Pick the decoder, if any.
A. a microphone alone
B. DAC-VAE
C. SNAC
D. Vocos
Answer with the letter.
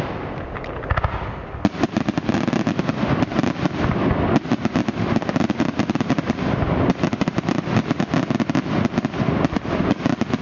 A